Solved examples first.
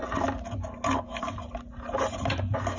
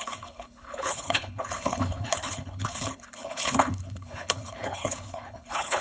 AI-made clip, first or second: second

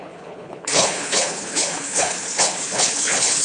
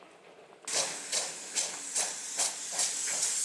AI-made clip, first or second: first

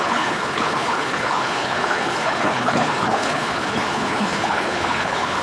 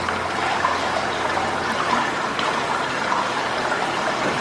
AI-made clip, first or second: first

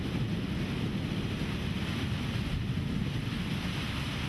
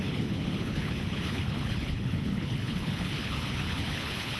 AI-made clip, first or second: second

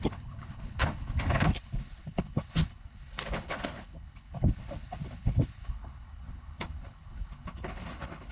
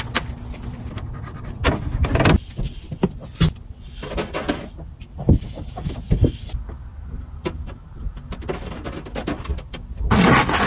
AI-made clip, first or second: first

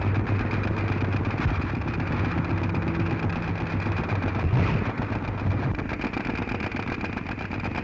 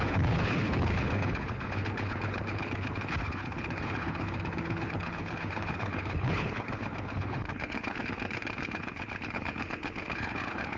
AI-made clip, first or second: second